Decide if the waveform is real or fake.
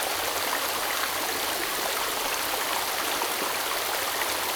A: real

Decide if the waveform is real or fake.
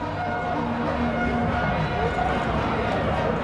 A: real